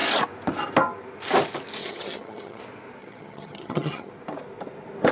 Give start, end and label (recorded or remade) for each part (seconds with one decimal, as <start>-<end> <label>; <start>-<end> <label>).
0.0-1.8 recorded; 1.8-2.6 remade; 2.6-3.0 recorded; 3.0-4.1 remade; 4.1-5.1 recorded